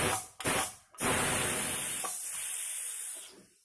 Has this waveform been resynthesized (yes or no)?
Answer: no